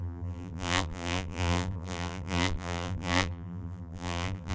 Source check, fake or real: fake